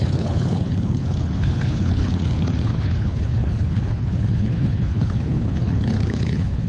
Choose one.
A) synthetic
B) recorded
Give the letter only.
A